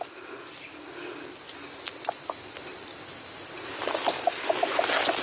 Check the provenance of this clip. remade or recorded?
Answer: recorded